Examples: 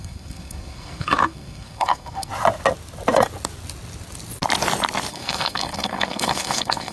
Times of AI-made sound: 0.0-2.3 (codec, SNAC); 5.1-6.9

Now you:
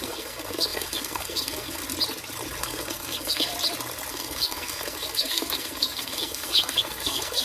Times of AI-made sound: 0.0-1.8 (codec, SNAC); 2.6-3.5; 4.1-7.4

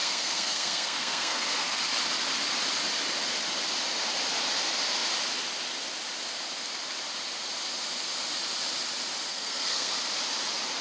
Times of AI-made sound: 0.0-1.8 (codec, SNAC); 9.3-9.9

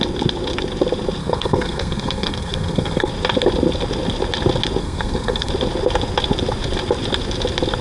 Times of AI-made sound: 1.2-3.1 (codec, SNAC); 4.8-5.5

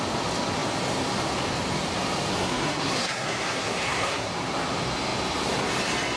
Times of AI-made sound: 2.3-4.3 (codec, SNAC)